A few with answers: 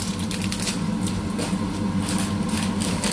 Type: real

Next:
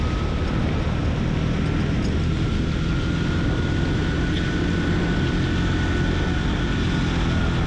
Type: real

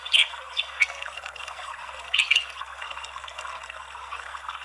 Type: fake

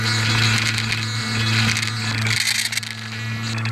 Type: real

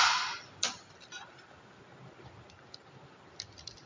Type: real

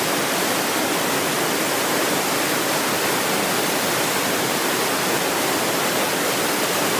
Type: real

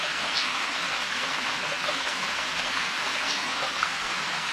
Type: fake